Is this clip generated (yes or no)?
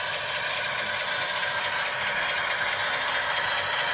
no